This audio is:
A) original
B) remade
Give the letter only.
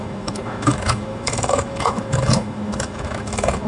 B